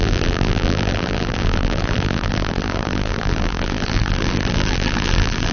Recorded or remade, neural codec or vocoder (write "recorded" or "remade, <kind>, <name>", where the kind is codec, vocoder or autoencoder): remade, vocoder, BigVGAN v2